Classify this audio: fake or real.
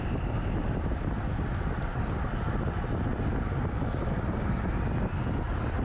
real